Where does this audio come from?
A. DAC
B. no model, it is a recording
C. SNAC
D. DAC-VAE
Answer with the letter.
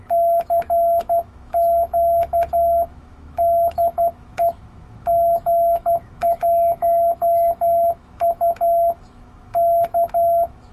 D